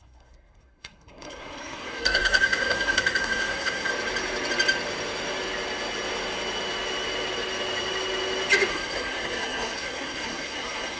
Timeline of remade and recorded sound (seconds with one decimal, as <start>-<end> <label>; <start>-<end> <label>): 0.0-3.9 remade; 3.9-8.7 recorded; 8.7-11.0 remade